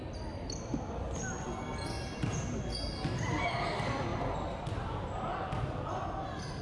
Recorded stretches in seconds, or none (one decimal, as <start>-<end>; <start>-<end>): 0.0-6.6